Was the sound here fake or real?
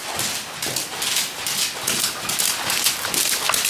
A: real